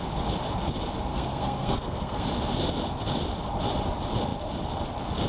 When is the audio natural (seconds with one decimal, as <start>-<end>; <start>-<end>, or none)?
0.0-1.1; 2.3-5.3